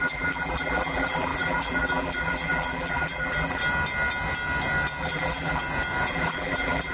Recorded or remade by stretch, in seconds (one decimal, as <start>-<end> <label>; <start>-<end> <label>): 0.0-3.6 remade; 3.6-5.0 recorded; 5.0-5.6 remade; 5.6-6.1 recorded; 6.1-6.9 remade